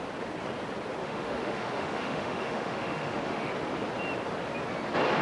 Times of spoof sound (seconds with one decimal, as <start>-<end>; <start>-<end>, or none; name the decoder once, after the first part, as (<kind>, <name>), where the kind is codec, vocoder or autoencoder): 1.0-3.5 (autoencoder, DAC-VAE)